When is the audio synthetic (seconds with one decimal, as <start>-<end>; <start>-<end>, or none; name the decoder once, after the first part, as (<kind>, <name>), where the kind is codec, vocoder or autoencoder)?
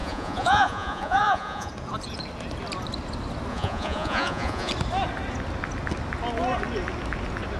0.0-1.7 (vocoder, Vocos); 3.5-4.7